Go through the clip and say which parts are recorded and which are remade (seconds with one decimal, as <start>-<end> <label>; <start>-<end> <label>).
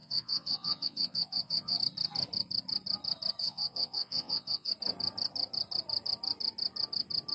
0.0-1.8 remade; 1.8-3.4 recorded; 3.4-4.7 remade; 4.7-7.3 recorded